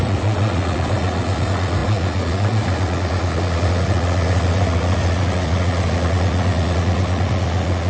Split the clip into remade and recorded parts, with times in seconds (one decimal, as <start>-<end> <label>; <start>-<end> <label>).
0.0-7.9 remade

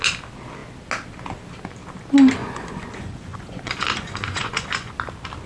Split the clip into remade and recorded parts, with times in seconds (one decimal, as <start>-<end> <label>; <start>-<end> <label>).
0.0-2.4 recorded; 2.4-4.9 remade; 4.9-5.5 recorded